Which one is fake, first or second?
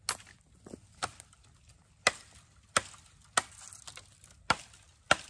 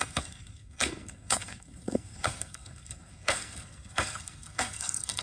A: second